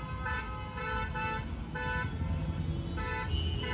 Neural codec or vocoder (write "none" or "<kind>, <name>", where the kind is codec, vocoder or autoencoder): none